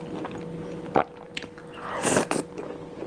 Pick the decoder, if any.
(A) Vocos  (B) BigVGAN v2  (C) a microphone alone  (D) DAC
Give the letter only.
C